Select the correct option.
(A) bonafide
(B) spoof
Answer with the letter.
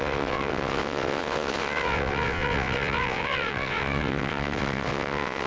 B